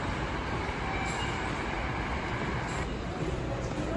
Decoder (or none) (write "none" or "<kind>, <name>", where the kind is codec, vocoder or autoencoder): vocoder, BigVGAN v2